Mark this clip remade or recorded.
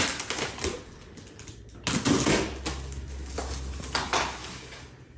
recorded